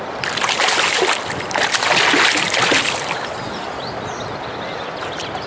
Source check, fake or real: real